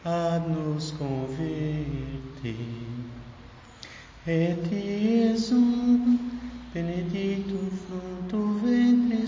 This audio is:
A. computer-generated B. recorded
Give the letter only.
B